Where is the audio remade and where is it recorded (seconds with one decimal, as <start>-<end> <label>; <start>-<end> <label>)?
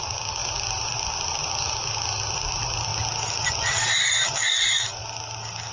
0.0-2.9 remade; 2.9-4.0 recorded; 4.0-5.0 remade; 5.0-5.7 recorded